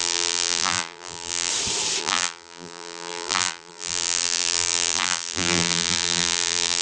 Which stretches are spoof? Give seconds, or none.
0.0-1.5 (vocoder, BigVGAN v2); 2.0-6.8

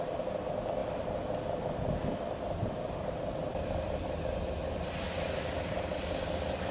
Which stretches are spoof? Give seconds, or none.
0.8-1.6 (vocoder, BigVGAN v2); 3.5-6.7

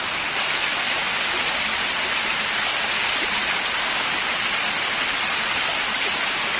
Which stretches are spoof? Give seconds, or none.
1.0-1.9 (vocoder, BigVGAN v2); 2.7-3.4

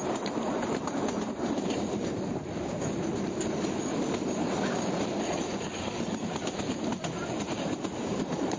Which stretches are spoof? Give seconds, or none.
0.0-2.4 (vocoder, BigVGAN v2); 7.5-8.6